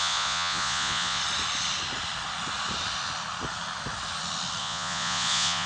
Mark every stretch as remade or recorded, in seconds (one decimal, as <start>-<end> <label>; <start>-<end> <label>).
0.0-1.2 remade; 1.2-4.6 recorded; 4.6-5.7 remade